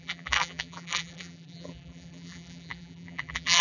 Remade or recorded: remade